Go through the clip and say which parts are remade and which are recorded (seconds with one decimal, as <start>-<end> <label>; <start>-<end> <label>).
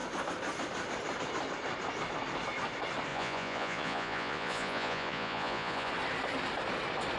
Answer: 0.0-3.1 recorded; 3.1-5.9 remade; 5.9-7.2 recorded